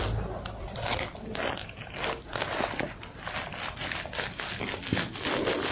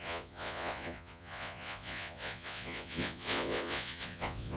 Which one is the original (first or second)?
first